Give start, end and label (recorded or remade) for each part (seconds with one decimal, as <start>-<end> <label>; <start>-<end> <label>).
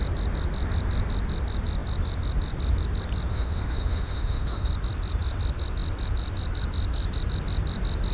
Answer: 0.0-3.3 recorded; 3.3-4.7 remade; 4.7-8.1 recorded